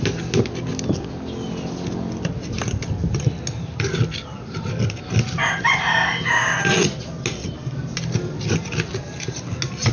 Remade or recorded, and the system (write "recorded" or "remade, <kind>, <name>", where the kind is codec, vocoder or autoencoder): recorded